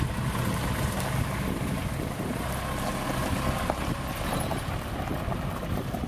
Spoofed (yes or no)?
no